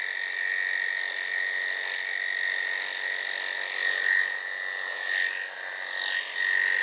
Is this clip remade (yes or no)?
no